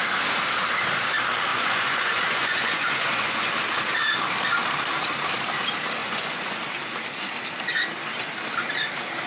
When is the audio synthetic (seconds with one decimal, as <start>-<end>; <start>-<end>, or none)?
1.5-3.5; 6.0-6.6